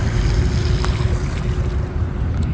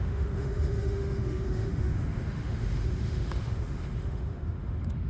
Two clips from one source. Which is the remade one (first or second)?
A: second